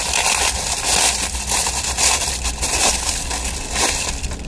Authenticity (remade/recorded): recorded